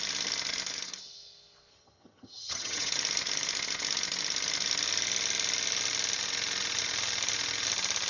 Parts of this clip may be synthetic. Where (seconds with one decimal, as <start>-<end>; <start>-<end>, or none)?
1.7-2.9